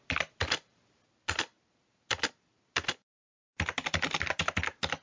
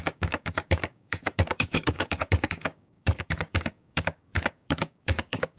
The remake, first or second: second